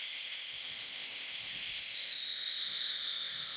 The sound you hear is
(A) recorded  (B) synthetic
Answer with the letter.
B